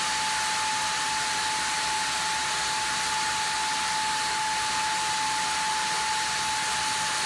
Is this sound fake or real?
real